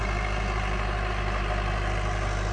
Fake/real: real